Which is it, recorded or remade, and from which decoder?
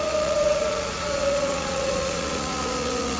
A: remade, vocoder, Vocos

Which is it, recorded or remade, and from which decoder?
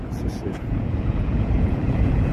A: remade, vocoder, Vocos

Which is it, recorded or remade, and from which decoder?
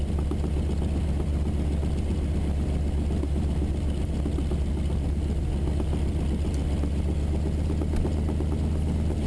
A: recorded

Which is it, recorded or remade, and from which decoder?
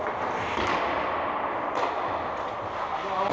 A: recorded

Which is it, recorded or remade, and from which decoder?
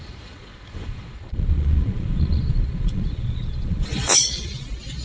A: remade, vocoder, Vocos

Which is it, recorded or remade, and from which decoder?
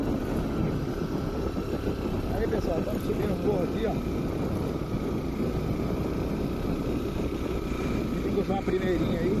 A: recorded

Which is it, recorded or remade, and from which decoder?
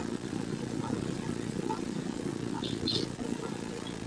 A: remade, vocoder, Vocos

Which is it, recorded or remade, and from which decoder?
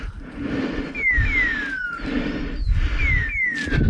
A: recorded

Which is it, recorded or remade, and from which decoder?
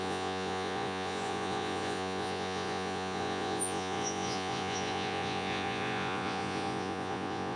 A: remade, vocoder, Vocos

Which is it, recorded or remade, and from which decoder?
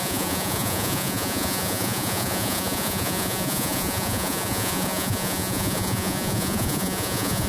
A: remade, vocoder, Vocos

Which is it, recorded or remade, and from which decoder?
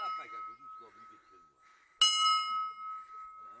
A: recorded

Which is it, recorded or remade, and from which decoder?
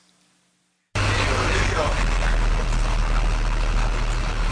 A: recorded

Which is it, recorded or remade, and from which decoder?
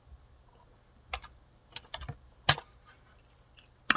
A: recorded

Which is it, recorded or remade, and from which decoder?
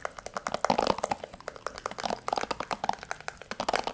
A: recorded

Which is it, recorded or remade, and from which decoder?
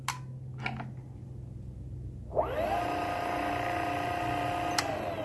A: recorded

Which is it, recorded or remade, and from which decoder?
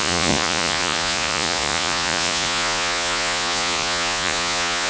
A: remade, vocoder, Vocos